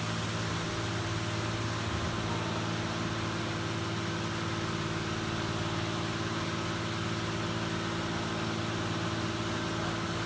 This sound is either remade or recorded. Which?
recorded